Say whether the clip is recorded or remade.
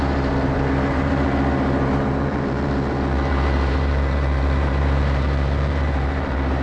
remade